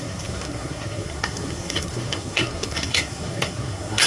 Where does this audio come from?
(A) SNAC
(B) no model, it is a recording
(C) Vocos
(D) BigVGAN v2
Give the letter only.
A